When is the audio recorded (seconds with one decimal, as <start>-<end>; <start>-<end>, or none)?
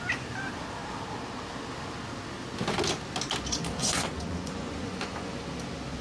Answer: 0.0-3.8; 5.4-6.0